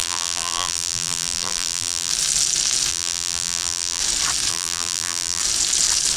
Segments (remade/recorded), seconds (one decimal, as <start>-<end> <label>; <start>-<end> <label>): 0.0-2.1 remade; 2.1-2.9 recorded; 2.9-4.0 remade; 4.0-4.5 recorded; 4.5-5.4 remade; 5.4-6.2 recorded

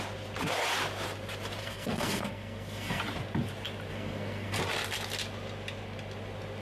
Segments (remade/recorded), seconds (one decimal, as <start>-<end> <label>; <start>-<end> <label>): 0.0-1.6 recorded; 1.6-3.0 remade; 3.0-3.9 recorded; 3.9-4.6 remade; 4.6-6.6 recorded

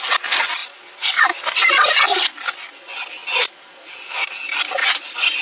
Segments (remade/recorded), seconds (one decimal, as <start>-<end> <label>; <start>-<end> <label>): 0.0-5.4 recorded

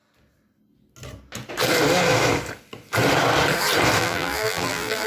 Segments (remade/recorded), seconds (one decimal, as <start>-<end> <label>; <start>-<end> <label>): 0.0-4.0 recorded; 4.0-5.1 remade

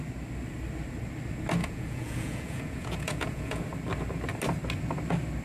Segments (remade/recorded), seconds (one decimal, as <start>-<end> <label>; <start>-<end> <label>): 0.0-1.6 recorded; 1.6-3.6 remade; 3.6-5.4 recorded

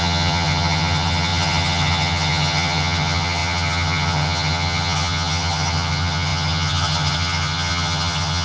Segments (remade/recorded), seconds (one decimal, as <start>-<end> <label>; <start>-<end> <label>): 0.0-8.4 remade

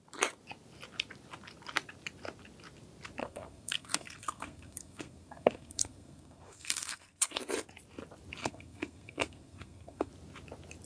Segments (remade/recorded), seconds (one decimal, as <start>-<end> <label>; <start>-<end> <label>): 0.0-3.2 recorded; 3.2-7.4 remade; 7.4-8.4 recorded; 8.4-10.1 remade; 10.1-10.9 recorded